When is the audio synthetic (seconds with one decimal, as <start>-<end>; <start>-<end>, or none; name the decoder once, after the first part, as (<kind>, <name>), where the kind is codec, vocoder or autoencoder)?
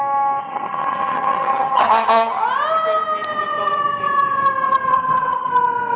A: 0.4-2.4 (vocoder, HiFi-GAN); 4.9-5.5